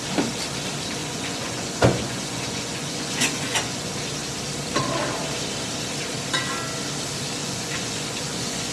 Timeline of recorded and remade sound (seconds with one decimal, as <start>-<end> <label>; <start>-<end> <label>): 0.0-1.0 recorded; 1.0-3.9 remade; 3.9-7.4 recorded; 7.4-8.7 remade